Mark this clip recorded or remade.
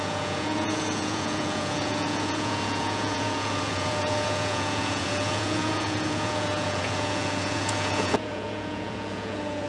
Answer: remade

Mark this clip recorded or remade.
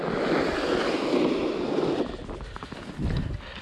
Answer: recorded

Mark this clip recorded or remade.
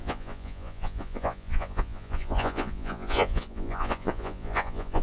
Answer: remade